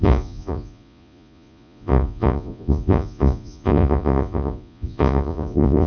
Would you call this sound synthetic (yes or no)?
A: yes